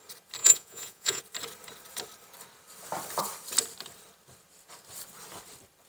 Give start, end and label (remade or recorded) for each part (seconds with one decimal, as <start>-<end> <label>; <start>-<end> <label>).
0.0-0.4 recorded; 0.4-1.2 remade; 1.2-5.9 recorded